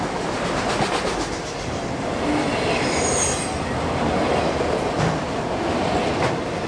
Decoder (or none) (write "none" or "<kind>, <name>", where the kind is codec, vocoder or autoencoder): none